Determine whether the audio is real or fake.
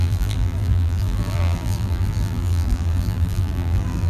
fake